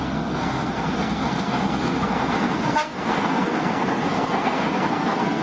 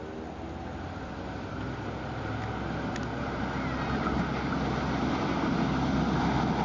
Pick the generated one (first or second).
first